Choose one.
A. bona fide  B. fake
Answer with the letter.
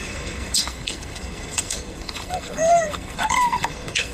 B